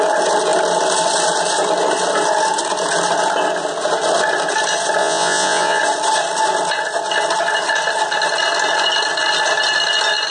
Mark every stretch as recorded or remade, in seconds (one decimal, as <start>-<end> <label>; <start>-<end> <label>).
0.0-5.0 recorded; 5.0-5.8 remade; 5.8-10.3 recorded